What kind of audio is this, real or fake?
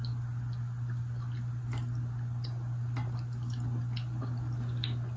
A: real